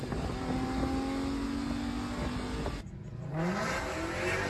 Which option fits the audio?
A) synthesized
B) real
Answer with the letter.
B